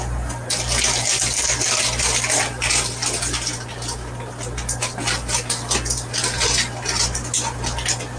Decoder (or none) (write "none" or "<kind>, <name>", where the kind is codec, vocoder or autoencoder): none